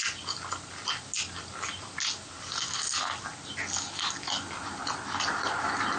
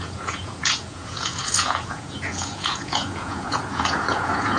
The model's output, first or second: second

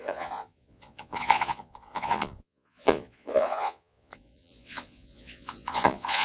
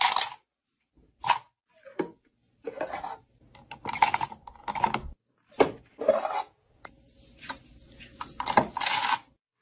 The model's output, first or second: first